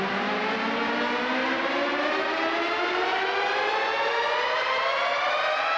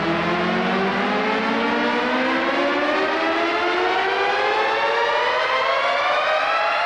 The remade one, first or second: first